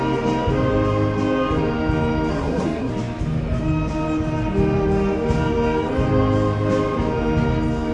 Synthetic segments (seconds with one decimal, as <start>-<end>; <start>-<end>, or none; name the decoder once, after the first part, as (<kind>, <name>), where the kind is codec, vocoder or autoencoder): 2.3-2.9 (codec, SNAC)